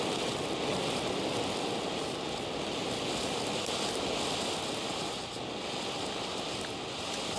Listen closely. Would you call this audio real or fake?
real